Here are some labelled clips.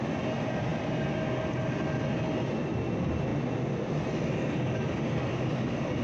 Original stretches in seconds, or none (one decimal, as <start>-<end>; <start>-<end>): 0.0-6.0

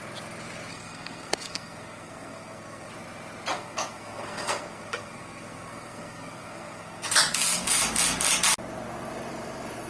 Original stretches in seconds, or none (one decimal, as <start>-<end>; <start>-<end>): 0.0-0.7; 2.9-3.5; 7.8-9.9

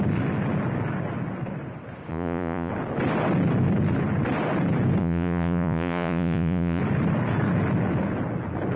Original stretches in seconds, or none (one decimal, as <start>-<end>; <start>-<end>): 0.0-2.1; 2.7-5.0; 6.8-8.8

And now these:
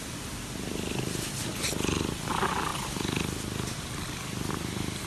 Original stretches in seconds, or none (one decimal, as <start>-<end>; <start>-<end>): 0.0-5.1

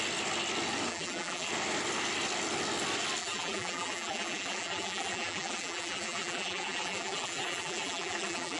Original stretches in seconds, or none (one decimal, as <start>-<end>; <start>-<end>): 0.0-0.9; 1.5-3.2